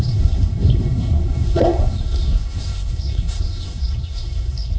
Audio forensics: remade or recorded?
remade